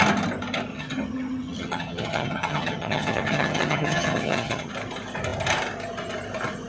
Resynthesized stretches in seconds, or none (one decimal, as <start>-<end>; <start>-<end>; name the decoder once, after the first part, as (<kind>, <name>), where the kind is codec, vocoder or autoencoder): 0.7-4.7 (vocoder, HiFi-GAN)